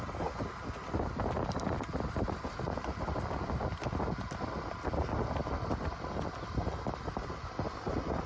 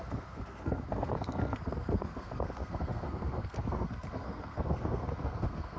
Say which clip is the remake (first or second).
second